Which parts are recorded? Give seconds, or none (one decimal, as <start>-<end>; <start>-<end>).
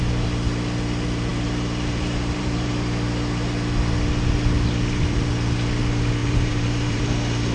0.0-1.3; 2.7-6.2; 7.0-7.5